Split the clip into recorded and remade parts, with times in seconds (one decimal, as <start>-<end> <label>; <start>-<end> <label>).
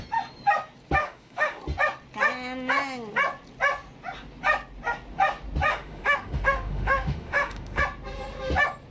0.0-1.0 recorded; 1.0-1.6 remade; 1.6-5.7 recorded; 5.7-7.8 remade; 7.8-8.9 recorded